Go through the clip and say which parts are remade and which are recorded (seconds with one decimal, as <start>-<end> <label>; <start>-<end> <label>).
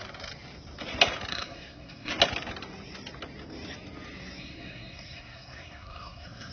0.0-1.3 recorded; 1.3-2.1 remade; 2.1-4.4 recorded; 4.4-6.5 remade